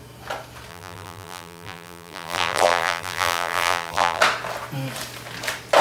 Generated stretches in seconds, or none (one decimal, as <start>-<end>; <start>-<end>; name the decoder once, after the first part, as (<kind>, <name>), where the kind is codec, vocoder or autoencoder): 0.7-4.2 (vocoder, BigVGAN v2)

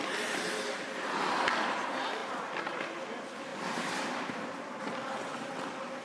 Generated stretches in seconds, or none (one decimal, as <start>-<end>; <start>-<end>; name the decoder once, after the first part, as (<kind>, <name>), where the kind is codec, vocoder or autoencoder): 3.5-4.8 (vocoder, BigVGAN v2)